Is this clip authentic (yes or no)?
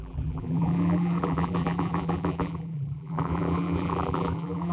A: no